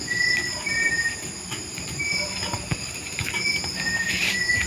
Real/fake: fake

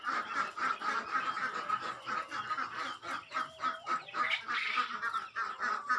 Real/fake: real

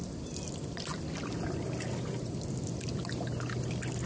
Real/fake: real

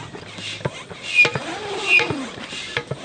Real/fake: fake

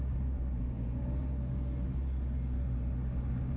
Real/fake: real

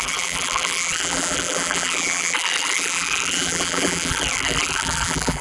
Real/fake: fake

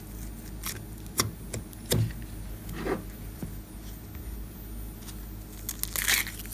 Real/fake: real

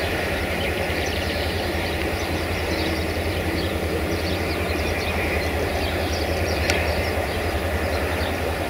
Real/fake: fake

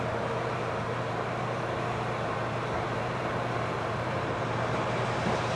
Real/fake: fake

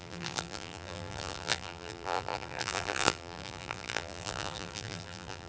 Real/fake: fake